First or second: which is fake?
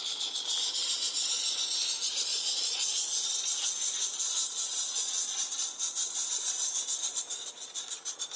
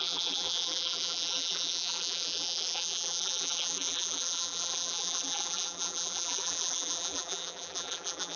second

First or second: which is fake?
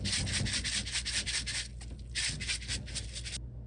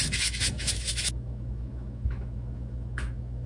second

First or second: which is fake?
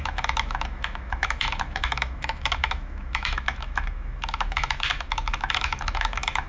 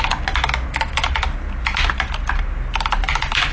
first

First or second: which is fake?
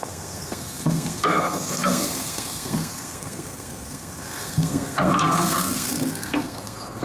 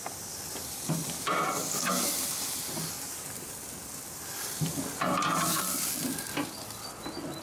first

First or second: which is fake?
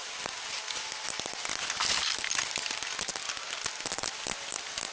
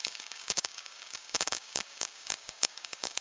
second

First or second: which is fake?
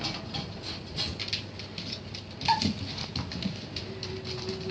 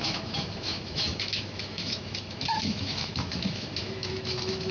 second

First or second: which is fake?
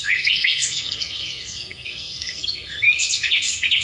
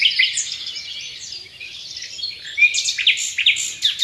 first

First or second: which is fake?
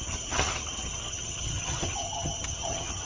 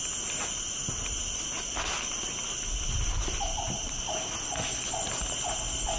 first